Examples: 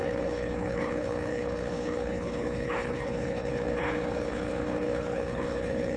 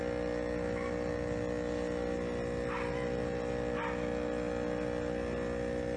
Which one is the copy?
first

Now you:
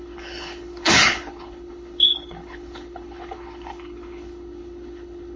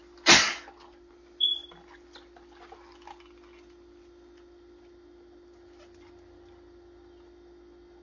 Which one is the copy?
first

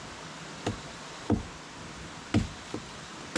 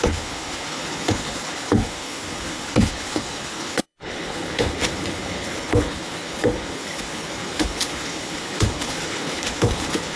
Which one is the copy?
second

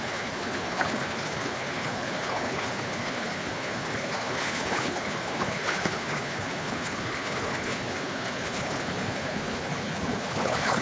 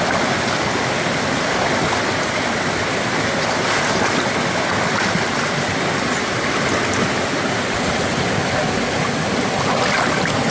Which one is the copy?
first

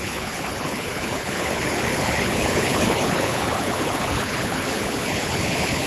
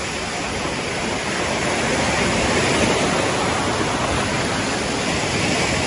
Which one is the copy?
first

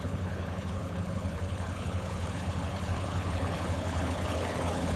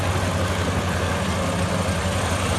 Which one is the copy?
first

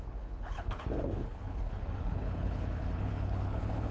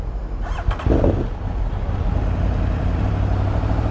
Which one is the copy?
first